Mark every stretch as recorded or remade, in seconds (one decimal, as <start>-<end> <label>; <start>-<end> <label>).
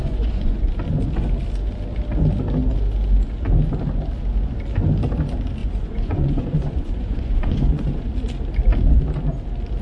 0.0-0.6 remade; 0.6-5.6 recorded; 5.6-8.1 remade; 8.1-9.8 recorded